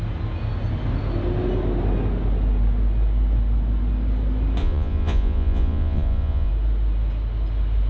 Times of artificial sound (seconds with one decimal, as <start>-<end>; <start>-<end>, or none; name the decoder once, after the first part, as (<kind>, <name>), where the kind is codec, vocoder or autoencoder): 4.6-6.5 (vocoder, Vocos)